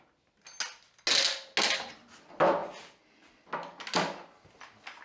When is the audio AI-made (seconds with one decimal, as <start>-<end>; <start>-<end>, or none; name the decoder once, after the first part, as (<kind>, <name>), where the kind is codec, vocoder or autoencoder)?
none